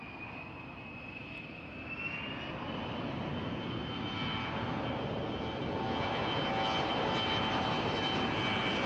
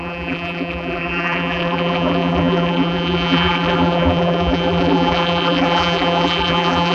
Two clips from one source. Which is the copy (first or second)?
second